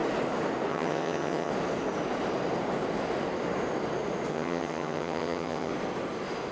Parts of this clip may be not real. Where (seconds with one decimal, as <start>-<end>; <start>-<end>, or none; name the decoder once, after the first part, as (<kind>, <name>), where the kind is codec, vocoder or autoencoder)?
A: 0.7-1.5 (vocoder, HiFi-GAN); 4.3-5.7